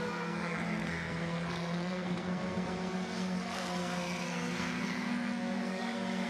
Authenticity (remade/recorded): remade